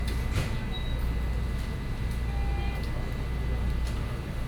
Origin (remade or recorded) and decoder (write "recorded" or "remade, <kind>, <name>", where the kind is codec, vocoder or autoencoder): recorded